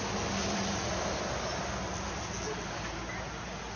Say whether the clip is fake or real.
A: real